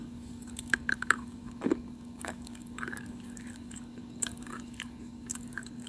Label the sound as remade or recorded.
remade